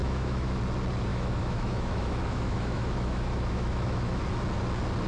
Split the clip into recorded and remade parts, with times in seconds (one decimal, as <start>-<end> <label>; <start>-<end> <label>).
0.0-0.6 remade; 0.6-1.1 recorded; 1.1-4.2 remade; 4.2-5.1 recorded